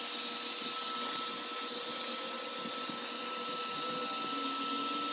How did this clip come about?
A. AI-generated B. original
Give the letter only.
B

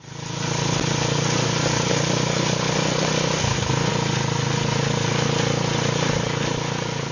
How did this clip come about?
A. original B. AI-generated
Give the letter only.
A